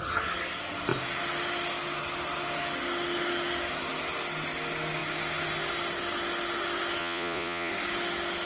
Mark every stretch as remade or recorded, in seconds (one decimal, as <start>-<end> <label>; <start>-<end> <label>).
0.0-7.0 recorded; 7.0-7.7 remade; 7.7-8.5 recorded